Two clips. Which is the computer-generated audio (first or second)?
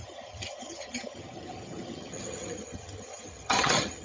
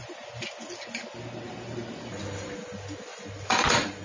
first